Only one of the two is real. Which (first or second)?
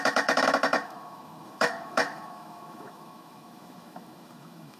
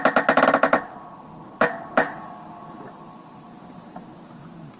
second